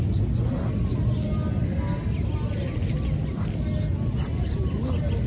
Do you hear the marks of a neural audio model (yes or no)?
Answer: no